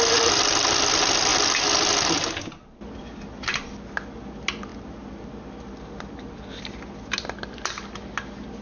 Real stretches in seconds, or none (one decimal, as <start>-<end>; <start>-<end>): 0.0-8.6